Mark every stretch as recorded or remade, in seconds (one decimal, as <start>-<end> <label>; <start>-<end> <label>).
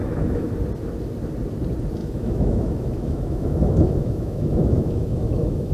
0.0-0.5 remade; 0.5-2.0 recorded; 2.0-5.7 remade